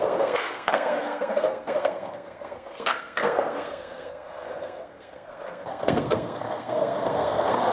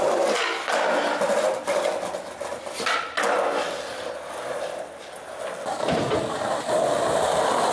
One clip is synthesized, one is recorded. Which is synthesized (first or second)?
first